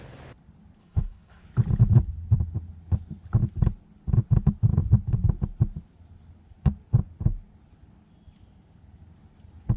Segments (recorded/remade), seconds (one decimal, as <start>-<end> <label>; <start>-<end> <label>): 0.0-0.8 recorded; 0.8-1.4 remade; 1.4-9.8 recorded